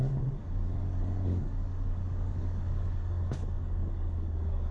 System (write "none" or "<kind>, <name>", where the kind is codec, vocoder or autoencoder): codec, DAC